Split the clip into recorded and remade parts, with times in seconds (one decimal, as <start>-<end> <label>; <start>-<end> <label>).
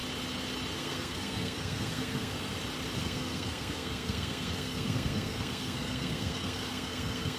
0.0-0.8 recorded; 0.8-2.5 remade; 2.5-3.0 recorded; 3.0-7.4 remade